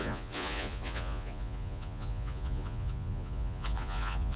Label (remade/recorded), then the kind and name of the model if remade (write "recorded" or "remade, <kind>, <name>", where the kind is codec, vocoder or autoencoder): remade, vocoder, Vocos